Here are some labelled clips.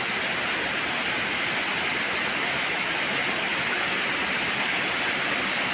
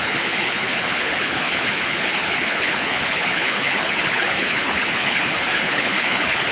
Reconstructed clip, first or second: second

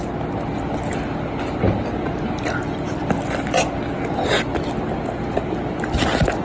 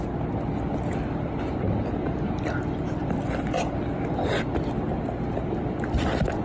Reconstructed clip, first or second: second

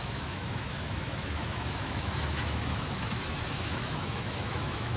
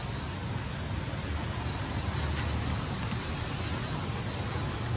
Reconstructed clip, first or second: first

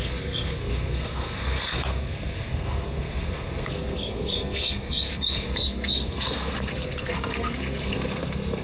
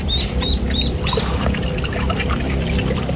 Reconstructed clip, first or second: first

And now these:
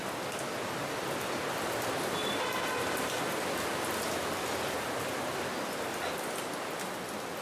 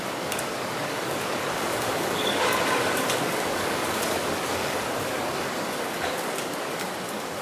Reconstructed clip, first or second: second